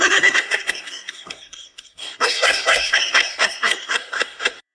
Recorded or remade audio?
remade